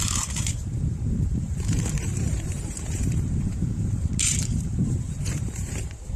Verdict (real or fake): fake